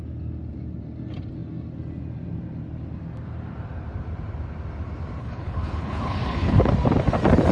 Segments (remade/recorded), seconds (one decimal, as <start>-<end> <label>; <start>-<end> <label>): 0.0-5.2 recorded; 5.2-6.6 remade; 6.6-7.5 recorded